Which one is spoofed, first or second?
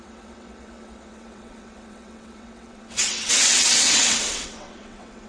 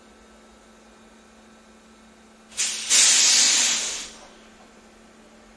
first